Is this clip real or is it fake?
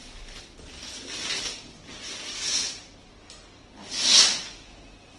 real